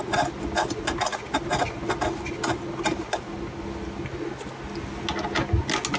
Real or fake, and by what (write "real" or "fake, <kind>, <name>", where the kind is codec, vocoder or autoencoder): real